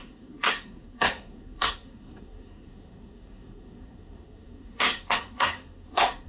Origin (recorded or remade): remade